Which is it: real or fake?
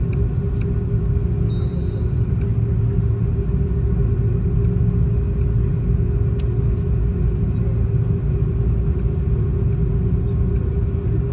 real